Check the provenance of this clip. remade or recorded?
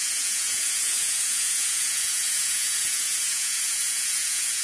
remade